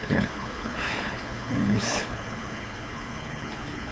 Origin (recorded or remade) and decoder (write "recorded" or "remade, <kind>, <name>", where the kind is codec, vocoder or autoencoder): remade, codec, HILCodec